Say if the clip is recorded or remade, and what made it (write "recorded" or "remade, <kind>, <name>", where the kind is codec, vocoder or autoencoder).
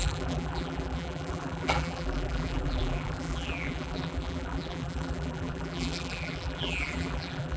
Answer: remade, vocoder, BigVGAN v2